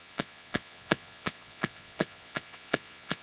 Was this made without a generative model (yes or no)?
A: no